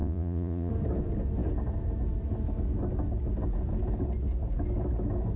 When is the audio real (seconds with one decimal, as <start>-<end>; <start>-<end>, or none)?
0.7-5.4

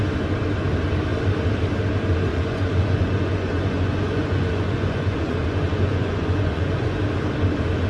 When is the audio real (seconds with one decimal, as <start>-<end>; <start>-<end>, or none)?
0.0-2.3; 7.0-7.9

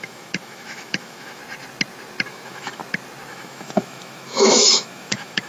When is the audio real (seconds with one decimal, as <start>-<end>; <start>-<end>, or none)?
1.4-2.3; 2.8-3.3

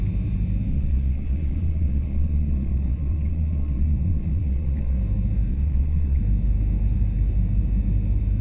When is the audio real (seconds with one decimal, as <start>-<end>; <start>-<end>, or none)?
0.0-0.7; 5.0-5.5; 6.2-8.4

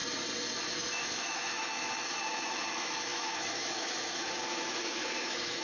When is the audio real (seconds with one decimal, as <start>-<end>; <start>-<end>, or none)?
0.0-0.7

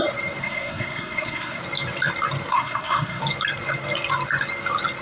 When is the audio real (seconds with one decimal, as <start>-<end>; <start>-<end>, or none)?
0.0-0.4; 1.6-2.5; 3.2-5.0

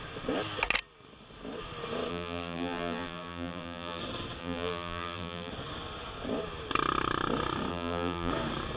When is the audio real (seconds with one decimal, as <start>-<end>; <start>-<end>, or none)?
0.0-2.1; 4.0-4.4; 5.5-7.7; 8.3-8.8